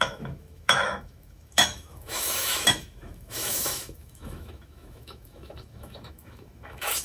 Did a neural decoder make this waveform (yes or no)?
yes